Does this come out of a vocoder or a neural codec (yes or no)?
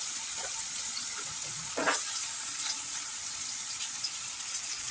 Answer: yes